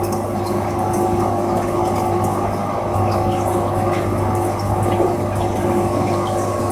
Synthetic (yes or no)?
yes